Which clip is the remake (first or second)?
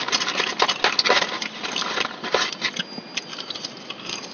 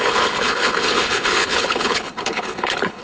second